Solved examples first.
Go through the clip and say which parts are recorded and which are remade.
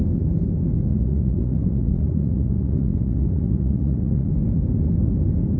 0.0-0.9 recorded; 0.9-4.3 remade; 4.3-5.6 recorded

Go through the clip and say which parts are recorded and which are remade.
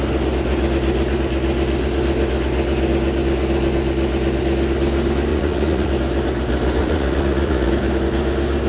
0.0-5.3 recorded; 5.3-5.9 remade; 5.9-6.8 recorded; 6.8-7.7 remade; 7.7-8.7 recorded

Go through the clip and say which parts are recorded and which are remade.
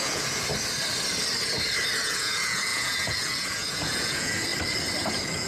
0.0-0.5 remade; 0.5-2.0 recorded; 2.0-4.5 remade; 4.5-5.1 recorded; 5.1-5.5 remade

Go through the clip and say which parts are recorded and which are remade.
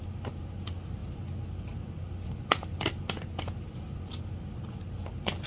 0.0-5.5 recorded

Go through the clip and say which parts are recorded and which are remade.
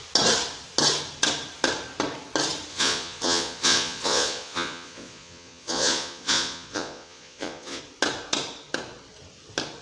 0.0-2.7 recorded; 2.7-7.8 remade; 7.8-9.8 recorded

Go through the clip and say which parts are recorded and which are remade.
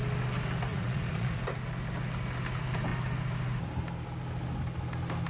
0.0-0.7 recorded; 0.7-1.4 remade; 1.4-5.3 recorded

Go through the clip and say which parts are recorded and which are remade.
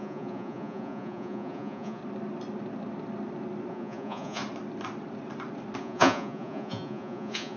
0.0-2.0 remade; 2.0-3.7 recorded; 3.7-4.4 remade; 4.4-5.8 recorded; 5.8-7.6 remade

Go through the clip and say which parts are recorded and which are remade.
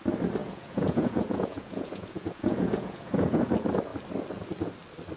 0.0-0.4 recorded; 0.4-3.5 remade; 3.5-5.2 recorded